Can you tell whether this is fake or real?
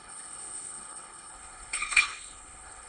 fake